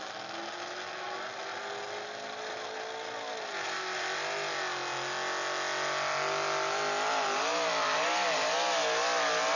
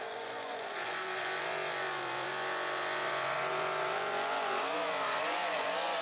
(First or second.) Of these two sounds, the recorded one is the first